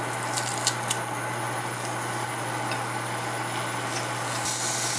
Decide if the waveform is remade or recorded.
recorded